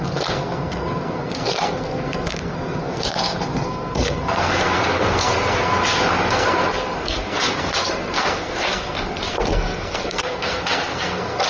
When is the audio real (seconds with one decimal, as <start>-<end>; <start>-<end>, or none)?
5.8-6.3